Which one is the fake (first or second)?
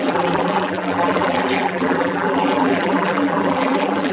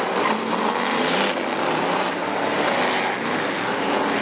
first